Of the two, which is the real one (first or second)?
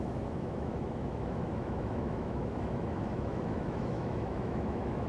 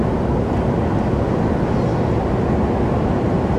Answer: second